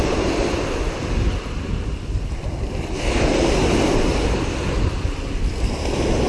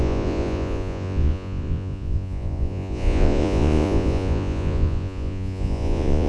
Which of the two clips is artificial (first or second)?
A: second